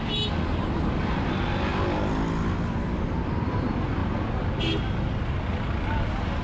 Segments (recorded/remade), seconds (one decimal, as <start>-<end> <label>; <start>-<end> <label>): 0.0-6.4 recorded